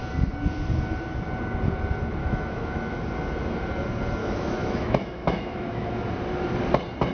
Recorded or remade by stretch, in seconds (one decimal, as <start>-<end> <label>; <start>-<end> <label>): 0.0-2.2 recorded; 2.2-3.0 remade; 3.0-4.2 recorded; 4.2-6.0 remade; 6.0-7.1 recorded